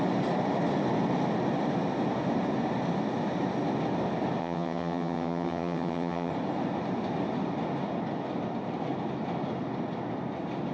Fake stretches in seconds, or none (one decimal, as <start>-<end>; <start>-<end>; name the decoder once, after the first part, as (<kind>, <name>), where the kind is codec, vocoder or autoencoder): 4.4-6.3 (vocoder, HiFi-GAN)